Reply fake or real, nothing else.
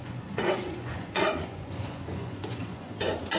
fake